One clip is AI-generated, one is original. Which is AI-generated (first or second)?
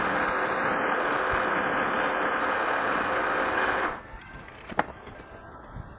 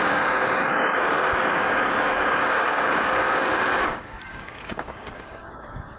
second